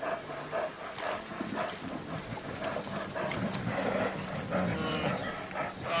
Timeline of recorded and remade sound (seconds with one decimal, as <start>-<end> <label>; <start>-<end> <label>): 0.0-6.0 recorded